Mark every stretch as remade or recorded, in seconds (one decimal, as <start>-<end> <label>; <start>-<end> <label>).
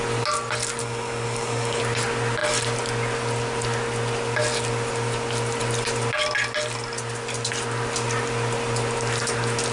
0.0-0.8 recorded; 0.8-1.8 remade; 1.8-9.7 recorded